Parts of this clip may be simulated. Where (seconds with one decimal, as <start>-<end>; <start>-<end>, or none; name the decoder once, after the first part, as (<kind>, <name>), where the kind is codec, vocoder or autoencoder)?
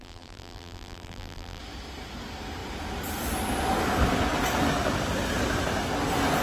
0.0-1.6 (vocoder, BigVGAN v2)